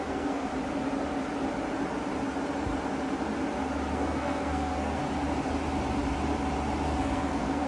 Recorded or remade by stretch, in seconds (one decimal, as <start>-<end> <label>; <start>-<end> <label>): 0.0-0.5 remade; 0.5-3.9 recorded; 3.9-5.0 remade; 5.0-7.0 recorded; 7.0-7.7 remade